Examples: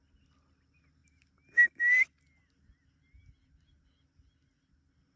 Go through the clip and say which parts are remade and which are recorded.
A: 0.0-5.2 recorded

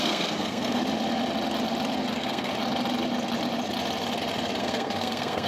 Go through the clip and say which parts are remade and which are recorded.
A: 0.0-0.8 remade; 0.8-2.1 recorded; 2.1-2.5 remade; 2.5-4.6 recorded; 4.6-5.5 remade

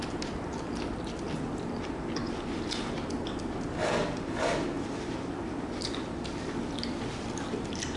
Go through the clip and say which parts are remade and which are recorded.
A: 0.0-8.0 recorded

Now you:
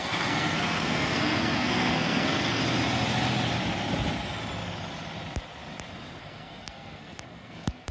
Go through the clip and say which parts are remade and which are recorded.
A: 0.0-2.6 remade; 2.6-6.2 recorded; 6.2-7.9 remade

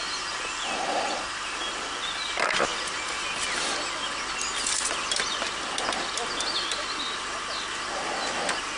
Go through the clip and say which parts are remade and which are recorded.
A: 0.0-8.8 recorded

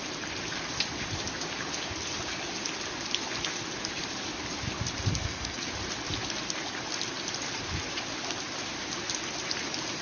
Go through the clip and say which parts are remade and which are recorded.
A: 0.0-5.1 recorded; 5.1-5.6 remade; 5.6-10.0 recorded

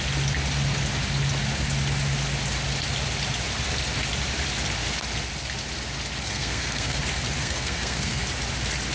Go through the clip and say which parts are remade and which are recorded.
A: 0.0-6.2 recorded; 6.2-7.0 remade; 7.0-7.4 recorded; 7.4-8.2 remade; 8.2-8.9 recorded

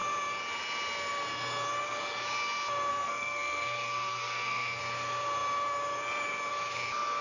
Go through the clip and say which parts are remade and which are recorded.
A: 0.0-2.9 recorded; 2.9-4.8 remade; 4.8-7.2 recorded